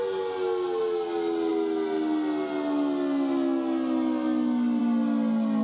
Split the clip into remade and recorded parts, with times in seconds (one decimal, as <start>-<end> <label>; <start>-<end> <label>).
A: 0.0-5.6 recorded